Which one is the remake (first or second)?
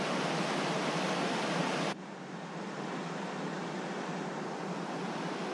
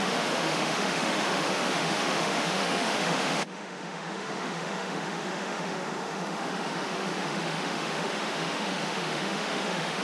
second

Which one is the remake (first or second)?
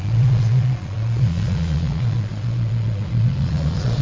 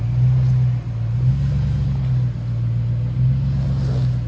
first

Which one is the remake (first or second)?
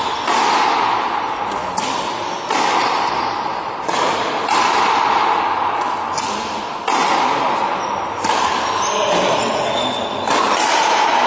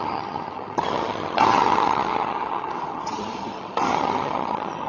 second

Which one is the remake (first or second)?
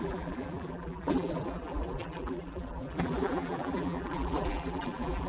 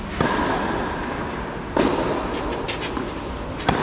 first